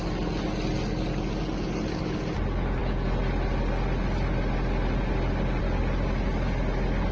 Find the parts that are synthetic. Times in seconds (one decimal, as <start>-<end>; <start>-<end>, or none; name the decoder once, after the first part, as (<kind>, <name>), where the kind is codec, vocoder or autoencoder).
none